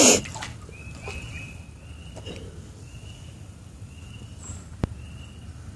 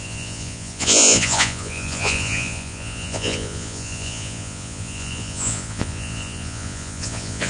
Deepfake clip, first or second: second